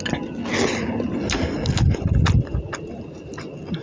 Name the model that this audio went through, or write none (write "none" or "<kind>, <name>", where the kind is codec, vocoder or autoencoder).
none